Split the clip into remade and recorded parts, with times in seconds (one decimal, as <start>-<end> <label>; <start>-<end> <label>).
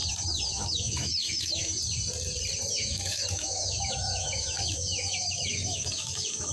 0.0-0.5 recorded; 0.5-1.7 remade; 1.7-2.7 recorded; 2.7-6.5 remade